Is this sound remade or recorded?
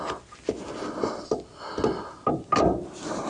recorded